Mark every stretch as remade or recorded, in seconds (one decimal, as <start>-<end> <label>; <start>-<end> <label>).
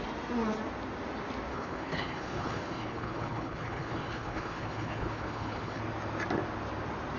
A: 0.0-1.5 recorded; 1.5-5.8 remade; 5.8-7.2 recorded